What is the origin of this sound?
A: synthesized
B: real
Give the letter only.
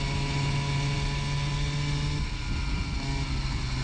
B